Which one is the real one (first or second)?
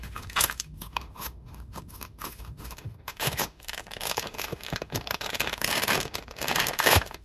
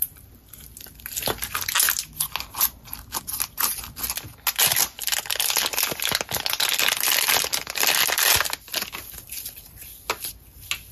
second